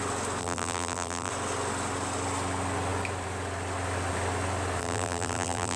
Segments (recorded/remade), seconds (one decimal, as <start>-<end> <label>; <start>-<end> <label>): 0.0-0.4 recorded; 0.4-1.3 remade; 1.3-4.8 recorded; 4.8-5.8 remade